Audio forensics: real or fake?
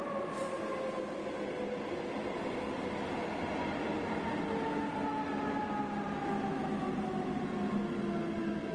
real